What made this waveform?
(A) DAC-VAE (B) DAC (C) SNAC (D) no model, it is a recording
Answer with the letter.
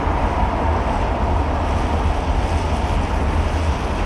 D